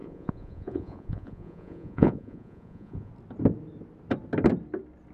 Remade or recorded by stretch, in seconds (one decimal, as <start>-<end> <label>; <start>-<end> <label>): 0.0-3.1 remade; 3.1-5.1 recorded